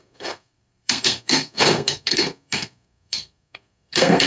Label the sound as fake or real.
fake